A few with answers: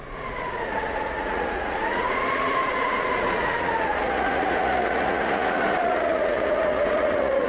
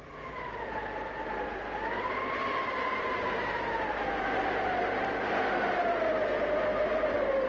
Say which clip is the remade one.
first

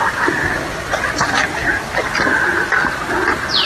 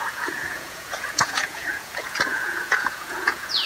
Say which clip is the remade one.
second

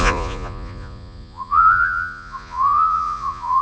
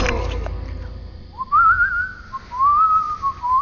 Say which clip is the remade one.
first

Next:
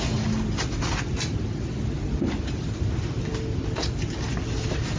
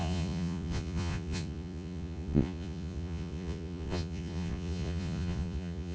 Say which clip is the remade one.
second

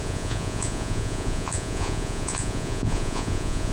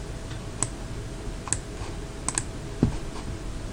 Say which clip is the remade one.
first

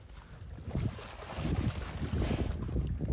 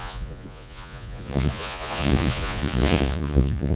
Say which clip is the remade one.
second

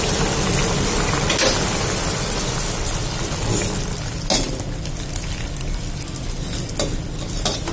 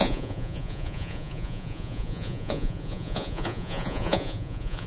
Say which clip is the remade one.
second